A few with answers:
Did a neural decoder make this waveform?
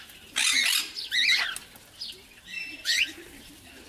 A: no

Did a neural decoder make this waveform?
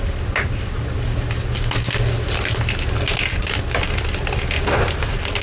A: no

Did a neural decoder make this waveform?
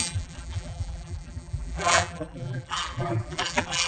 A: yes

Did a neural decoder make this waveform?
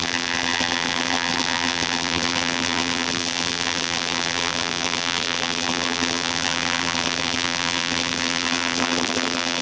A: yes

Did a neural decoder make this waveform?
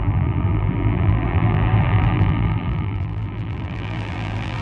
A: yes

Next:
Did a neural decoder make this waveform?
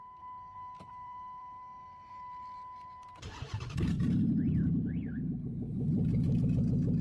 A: yes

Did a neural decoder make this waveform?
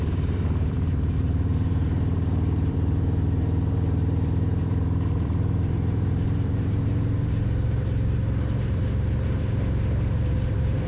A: yes